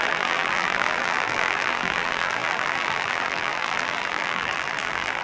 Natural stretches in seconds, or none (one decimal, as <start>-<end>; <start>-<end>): none